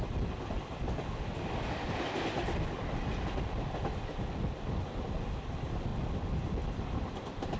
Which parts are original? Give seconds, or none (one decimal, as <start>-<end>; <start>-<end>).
0.0-7.6